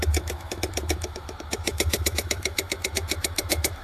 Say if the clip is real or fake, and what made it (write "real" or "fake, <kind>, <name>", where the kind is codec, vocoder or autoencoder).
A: fake, autoencoder, DAC-VAE